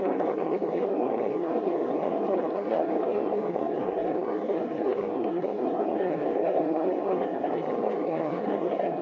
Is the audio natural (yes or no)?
no